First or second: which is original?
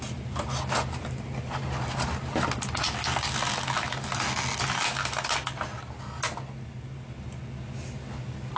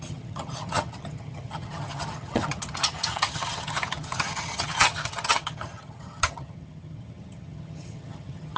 first